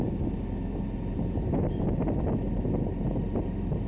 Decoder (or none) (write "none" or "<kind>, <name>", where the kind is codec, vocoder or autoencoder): none